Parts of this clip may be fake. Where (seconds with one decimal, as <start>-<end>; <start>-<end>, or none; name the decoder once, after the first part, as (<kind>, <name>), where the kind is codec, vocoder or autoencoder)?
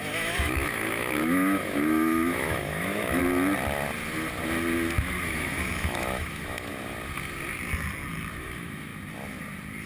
0.0-3.2 (autoencoder, DAC-VAE); 5.2-6.7; 8.4-8.9